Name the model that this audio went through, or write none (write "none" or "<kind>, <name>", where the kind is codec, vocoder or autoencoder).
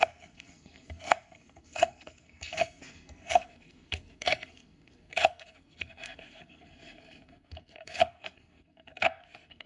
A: codec, SNAC